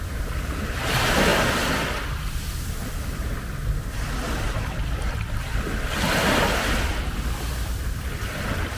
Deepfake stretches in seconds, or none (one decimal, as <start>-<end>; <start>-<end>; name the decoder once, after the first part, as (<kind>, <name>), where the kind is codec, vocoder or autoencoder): none